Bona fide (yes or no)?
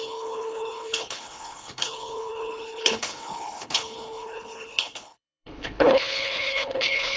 no